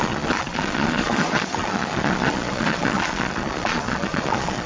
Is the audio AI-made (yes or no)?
yes